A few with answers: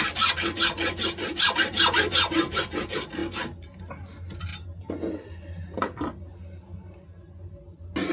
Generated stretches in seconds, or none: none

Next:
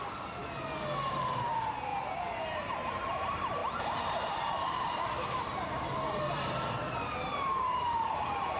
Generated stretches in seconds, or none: 0.0-0.4 (vocoder, BigVGAN v2); 1.1-1.9; 2.6-8.6

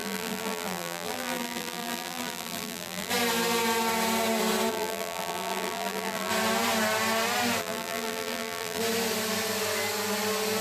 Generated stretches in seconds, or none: 0.0-3.1 (vocoder, BigVGAN v2); 4.7-6.3; 7.6-8.8

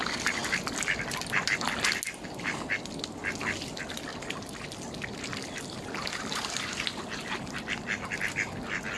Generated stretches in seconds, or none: none

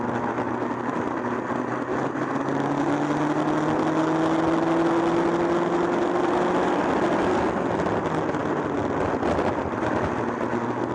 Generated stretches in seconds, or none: none